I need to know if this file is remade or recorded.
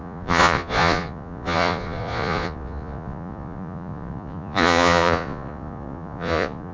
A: remade